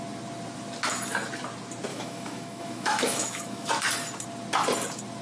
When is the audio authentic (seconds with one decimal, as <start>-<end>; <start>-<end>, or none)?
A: 0.0-1.9; 3.7-5.2